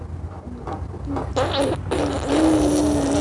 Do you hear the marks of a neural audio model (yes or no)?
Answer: no